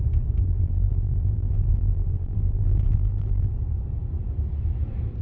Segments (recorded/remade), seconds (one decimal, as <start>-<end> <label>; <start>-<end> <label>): 0.0-0.4 recorded; 0.4-3.5 remade; 3.5-5.2 recorded

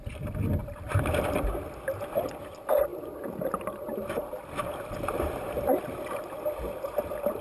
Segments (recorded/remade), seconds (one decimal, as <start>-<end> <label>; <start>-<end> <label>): 0.0-0.6 recorded; 0.6-1.1 remade; 1.1-7.4 recorded

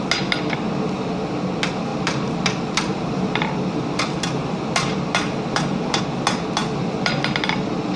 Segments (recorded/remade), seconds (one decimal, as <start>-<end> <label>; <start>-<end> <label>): 0.0-1.9 recorded; 1.9-6.0 remade; 6.0-6.6 recorded; 6.6-7.1 remade; 7.1-8.0 recorded

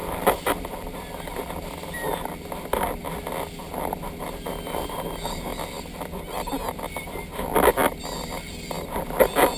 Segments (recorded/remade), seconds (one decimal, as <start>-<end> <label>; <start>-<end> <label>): 0.0-1.1 remade; 1.1-9.6 recorded

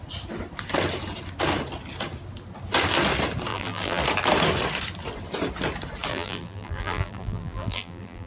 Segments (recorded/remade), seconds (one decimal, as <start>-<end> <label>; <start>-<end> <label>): 0.0-3.5 recorded; 3.5-4.0 remade; 4.0-6.1 recorded; 6.1-8.3 remade

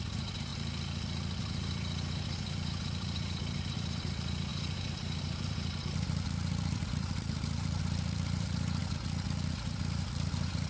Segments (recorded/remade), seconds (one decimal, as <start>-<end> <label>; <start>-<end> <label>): 0.0-0.5 remade; 0.5-1.4 recorded; 1.4-8.8 remade; 8.8-9.5 recorded; 9.5-10.7 remade